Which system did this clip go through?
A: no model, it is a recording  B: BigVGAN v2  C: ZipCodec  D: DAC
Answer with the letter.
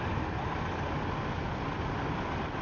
A